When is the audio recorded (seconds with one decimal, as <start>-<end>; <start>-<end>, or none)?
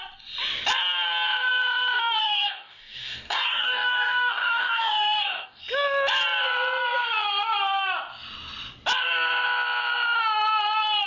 0.0-2.2; 5.6-11.1